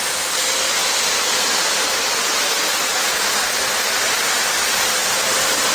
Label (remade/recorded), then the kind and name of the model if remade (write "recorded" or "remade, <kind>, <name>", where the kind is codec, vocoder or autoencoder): recorded